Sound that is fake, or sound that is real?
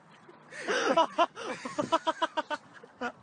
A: real